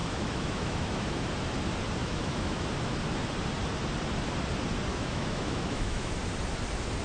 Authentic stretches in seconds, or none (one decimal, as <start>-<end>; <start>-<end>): 1.3-2.0; 2.7-4.9; 6.1-7.0